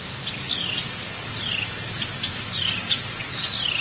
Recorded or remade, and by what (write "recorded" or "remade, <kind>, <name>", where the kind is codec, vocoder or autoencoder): recorded